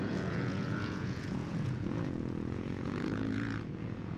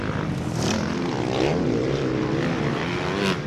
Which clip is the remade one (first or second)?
first